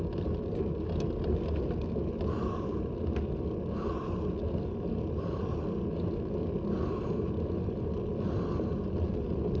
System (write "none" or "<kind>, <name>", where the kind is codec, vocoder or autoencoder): none